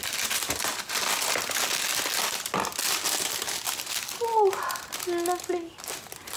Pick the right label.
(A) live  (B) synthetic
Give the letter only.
A